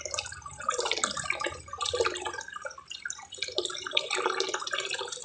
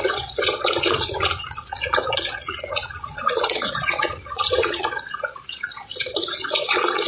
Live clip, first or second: first